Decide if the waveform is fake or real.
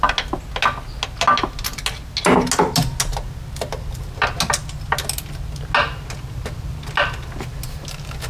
real